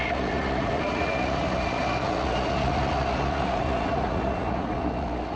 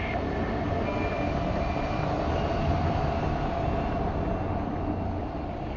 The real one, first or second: second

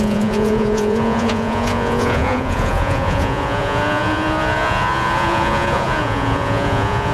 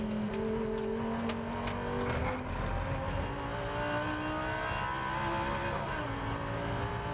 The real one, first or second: second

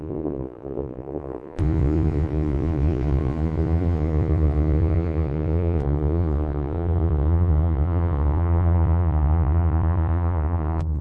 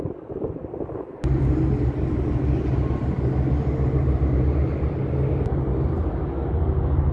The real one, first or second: second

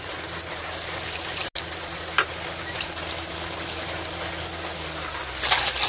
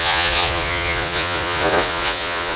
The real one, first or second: first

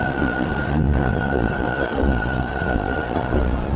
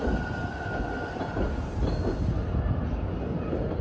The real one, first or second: second